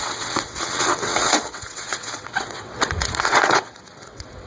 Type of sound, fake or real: fake